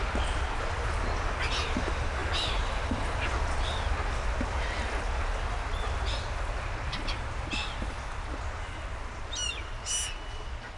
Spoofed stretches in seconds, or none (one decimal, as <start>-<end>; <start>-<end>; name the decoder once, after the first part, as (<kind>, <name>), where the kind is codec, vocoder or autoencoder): none